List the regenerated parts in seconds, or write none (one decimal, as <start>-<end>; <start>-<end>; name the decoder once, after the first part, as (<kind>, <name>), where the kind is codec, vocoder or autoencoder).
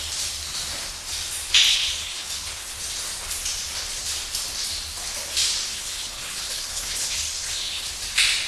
1.7-2.8 (codec, HILCodec); 5.7-7.9